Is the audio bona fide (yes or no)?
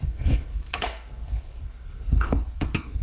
no